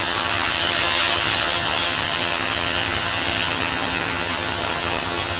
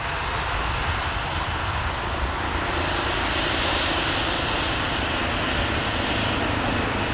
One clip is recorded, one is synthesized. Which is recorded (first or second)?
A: second